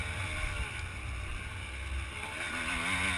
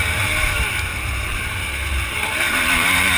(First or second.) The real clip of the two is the first